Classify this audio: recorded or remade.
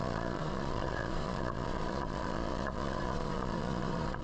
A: remade